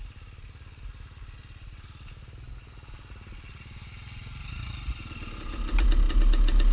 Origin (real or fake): real